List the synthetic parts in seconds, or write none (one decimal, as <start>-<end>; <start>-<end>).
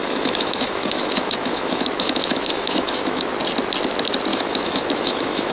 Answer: 0.0-3.3; 4.3-5.5